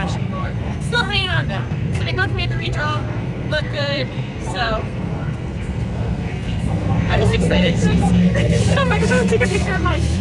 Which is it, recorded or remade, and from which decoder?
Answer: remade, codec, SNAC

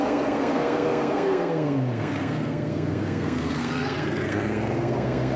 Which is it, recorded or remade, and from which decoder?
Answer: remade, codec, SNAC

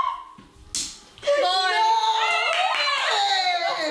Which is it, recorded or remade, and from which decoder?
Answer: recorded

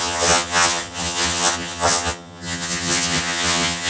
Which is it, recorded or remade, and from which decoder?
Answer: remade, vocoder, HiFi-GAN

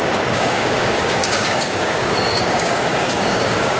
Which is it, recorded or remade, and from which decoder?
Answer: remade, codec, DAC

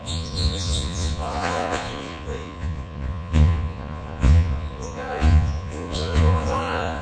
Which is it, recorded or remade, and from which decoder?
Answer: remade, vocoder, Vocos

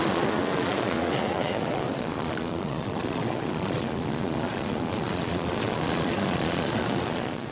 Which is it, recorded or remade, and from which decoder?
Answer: remade, vocoder, Vocos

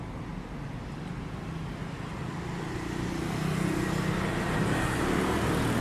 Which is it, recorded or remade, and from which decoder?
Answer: recorded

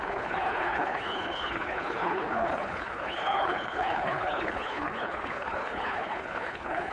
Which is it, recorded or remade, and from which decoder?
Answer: remade, codec, HILCodec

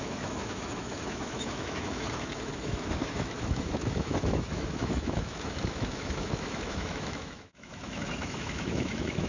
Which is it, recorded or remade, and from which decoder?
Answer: remade, autoencoder, DAC-VAE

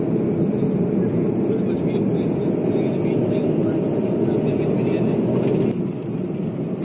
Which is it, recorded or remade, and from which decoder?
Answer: recorded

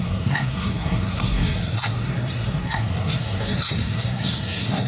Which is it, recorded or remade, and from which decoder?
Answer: remade, codec, SNAC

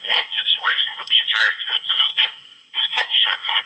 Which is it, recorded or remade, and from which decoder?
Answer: remade, codec, SNAC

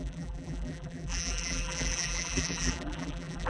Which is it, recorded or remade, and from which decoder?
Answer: remade, vocoder, BigVGAN v2